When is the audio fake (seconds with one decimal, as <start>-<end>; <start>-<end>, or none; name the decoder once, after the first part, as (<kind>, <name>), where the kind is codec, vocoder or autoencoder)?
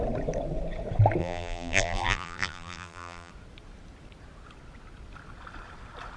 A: 1.2-3.3 (vocoder, BigVGAN v2)